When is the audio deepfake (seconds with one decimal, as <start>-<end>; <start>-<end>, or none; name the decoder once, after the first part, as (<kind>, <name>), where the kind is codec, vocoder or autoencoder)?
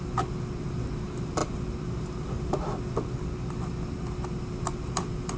none